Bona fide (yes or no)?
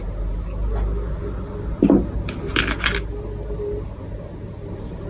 yes